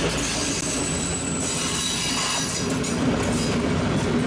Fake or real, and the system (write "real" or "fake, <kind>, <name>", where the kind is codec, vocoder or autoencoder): real